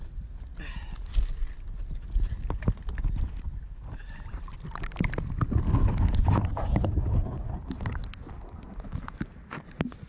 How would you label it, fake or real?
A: real